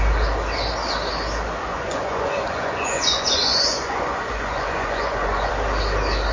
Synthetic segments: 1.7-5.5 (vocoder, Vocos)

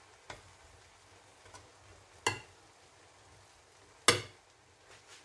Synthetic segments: none